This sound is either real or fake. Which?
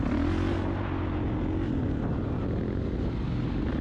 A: real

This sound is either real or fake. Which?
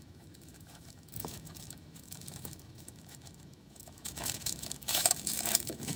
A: fake